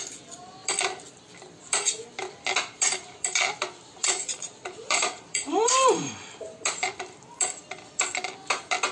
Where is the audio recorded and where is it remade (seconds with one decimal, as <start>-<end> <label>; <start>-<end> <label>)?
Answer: 0.0-4.0 recorded; 4.0-6.1 remade; 6.1-8.9 recorded